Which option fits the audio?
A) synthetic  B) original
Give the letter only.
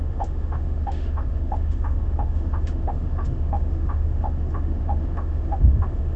A